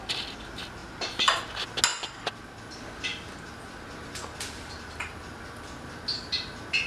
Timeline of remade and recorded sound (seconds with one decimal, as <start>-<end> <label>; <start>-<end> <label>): 0.0-6.9 recorded